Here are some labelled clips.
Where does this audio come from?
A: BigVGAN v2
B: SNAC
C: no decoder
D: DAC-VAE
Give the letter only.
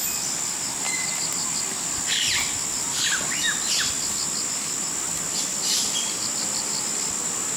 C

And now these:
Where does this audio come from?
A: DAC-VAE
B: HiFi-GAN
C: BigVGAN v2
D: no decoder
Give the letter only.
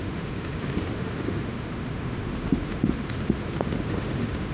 A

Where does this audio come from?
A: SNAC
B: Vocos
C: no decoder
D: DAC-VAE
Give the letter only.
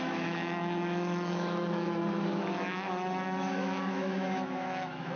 D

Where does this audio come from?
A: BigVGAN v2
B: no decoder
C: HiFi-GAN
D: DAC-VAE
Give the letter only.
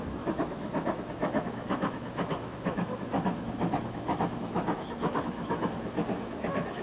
D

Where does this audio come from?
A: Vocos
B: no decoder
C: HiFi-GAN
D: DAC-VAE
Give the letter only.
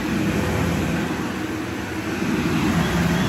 B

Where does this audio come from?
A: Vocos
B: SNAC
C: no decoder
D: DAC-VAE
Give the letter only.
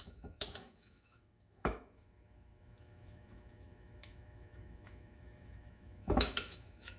D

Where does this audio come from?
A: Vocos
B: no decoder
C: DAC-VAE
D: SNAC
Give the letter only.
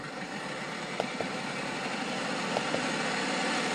B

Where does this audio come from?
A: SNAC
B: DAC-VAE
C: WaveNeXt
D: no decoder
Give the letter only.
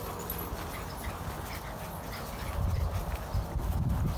D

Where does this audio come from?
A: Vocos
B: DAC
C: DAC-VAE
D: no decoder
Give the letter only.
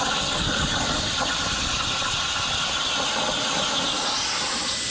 D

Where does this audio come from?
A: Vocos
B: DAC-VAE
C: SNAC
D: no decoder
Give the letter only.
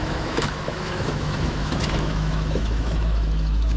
B